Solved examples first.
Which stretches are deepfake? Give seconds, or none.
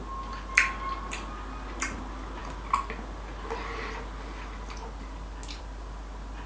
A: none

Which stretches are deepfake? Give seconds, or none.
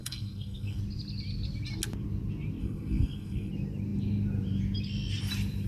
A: 0.0-0.8 (codec, SNAC); 2.6-3.5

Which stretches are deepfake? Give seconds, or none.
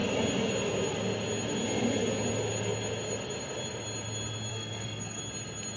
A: 4.5-5.2 (codec, SNAC)